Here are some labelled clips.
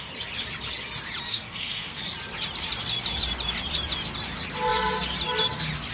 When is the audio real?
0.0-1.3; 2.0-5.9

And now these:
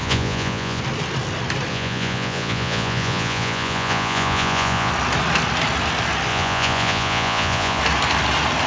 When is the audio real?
0.8-1.7; 4.9-6.3; 7.8-8.7

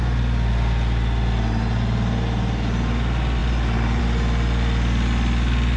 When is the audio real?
0.0-5.8

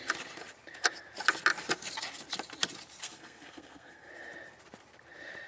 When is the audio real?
0.0-3.0; 4.1-5.5

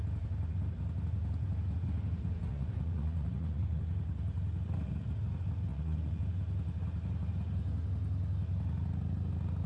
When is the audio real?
0.0-2.5; 3.8-5.7; 6.2-9.7

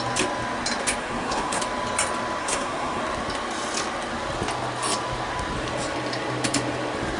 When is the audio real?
0.0-1.0; 1.6-2.4; 3.0-7.2